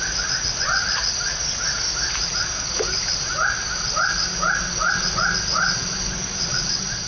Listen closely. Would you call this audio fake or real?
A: real